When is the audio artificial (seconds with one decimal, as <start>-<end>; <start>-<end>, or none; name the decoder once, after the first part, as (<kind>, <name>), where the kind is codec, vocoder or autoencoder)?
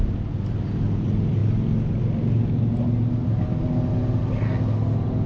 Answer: none